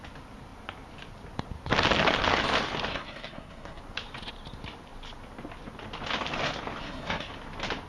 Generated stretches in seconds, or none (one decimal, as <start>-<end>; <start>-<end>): 2.9-3.8; 6.8-7.3